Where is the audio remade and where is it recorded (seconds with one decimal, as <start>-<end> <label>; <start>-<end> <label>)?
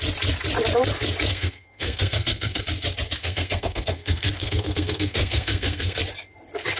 0.0-1.3 recorded; 1.3-2.6 remade; 2.6-3.2 recorded; 3.2-6.0 remade; 6.0-6.8 recorded